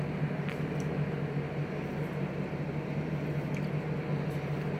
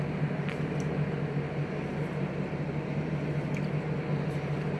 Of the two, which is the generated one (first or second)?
second